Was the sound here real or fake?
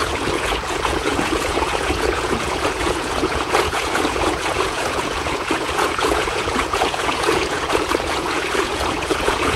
fake